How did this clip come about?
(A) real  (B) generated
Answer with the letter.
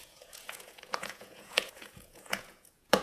B